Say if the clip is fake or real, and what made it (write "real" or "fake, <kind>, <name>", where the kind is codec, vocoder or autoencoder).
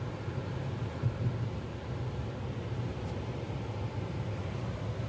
real